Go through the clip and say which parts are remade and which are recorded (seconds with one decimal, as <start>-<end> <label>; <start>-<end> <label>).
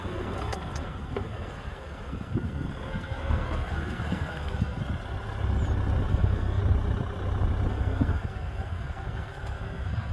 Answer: 0.0-4.8 remade; 4.8-6.1 recorded; 6.1-6.6 remade; 6.6-7.7 recorded; 7.7-10.1 remade